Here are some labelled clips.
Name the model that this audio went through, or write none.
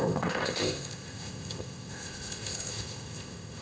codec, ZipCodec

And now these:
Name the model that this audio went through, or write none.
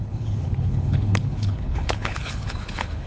codec, HILCodec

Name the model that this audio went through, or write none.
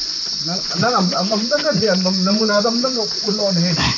vocoder, Vocos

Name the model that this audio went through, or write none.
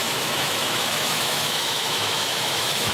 autoencoder, DAC-VAE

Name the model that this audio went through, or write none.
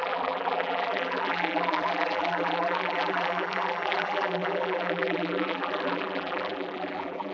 vocoder, BigVGAN v2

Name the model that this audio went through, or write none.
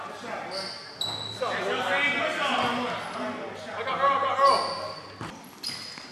none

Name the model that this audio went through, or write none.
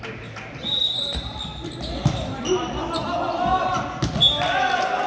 none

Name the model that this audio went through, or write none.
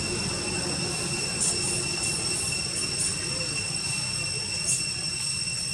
none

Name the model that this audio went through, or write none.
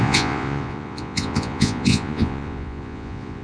vocoder, Vocos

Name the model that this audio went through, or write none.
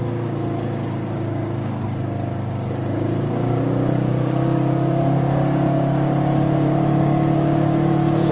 codec, DAC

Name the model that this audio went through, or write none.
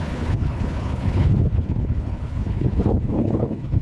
codec, HILCodec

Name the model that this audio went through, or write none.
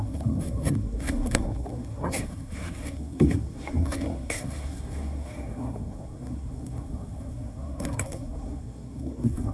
codec, SNAC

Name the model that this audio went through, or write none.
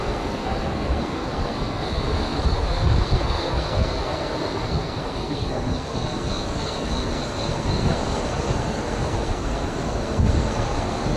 codec, SNAC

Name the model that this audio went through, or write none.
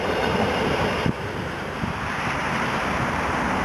vocoder, BigVGAN v2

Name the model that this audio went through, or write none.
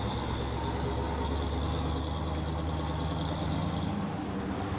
none